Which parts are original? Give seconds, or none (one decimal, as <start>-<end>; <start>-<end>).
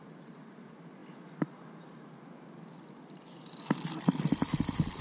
0.0-5.0